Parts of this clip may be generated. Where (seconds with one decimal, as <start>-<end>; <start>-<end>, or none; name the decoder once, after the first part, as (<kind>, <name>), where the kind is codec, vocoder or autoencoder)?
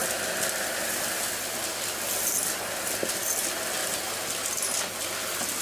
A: none